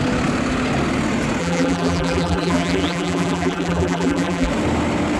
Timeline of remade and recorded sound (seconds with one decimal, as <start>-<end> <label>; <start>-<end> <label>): 0.0-1.4 recorded; 1.4-4.5 remade; 4.5-5.2 recorded